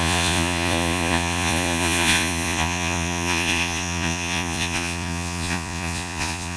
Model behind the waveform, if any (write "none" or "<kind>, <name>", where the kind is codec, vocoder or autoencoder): vocoder, Vocos